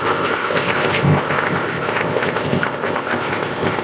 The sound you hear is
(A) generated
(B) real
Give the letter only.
A